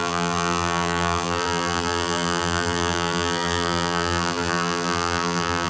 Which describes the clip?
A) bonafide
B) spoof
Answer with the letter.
B